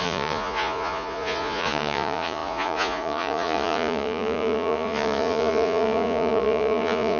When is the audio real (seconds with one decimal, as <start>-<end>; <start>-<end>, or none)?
none